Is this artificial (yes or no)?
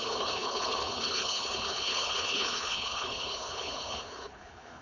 yes